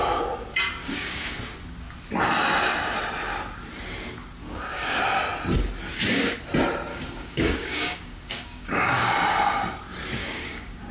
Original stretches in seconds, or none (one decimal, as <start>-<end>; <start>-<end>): 0.0-0.8; 1.4-4.4; 5.0-6.9; 9.1-10.2